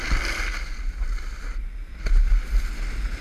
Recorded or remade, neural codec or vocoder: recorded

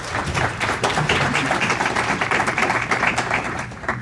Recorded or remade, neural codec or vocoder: remade, vocoder, BigVGAN v2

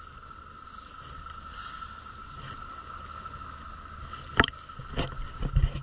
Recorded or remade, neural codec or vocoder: recorded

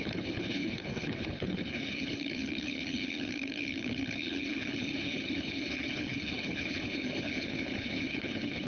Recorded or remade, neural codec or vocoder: remade, codec, HILCodec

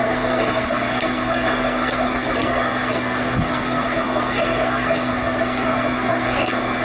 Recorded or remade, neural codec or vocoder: remade, codec, SNAC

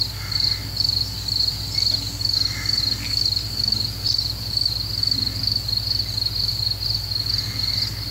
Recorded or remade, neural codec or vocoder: recorded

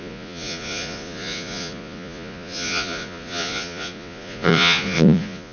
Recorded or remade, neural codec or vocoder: remade, vocoder, Vocos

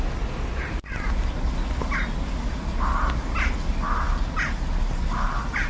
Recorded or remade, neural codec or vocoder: recorded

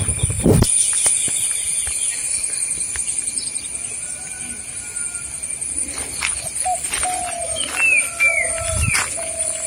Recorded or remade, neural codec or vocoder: recorded